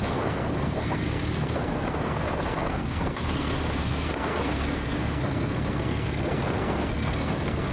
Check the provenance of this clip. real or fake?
fake